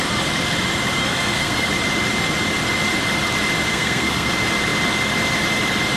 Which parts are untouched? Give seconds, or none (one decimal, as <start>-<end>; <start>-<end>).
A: 0.0-1.0; 1.7-3.7; 4.3-6.0